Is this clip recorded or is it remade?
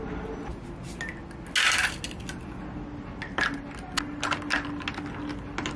recorded